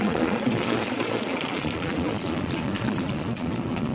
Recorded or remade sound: remade